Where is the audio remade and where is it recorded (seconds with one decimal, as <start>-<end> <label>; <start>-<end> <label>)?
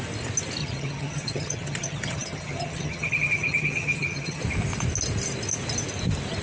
0.0-0.6 recorded; 0.6-4.4 remade; 4.4-6.4 recorded